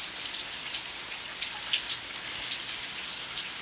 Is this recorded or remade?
recorded